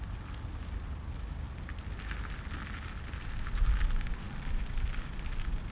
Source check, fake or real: real